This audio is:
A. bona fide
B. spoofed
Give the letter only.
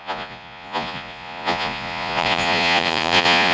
B